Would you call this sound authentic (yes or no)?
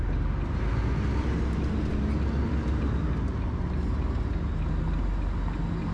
yes